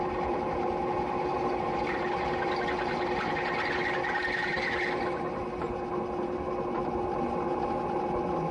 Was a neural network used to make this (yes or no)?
no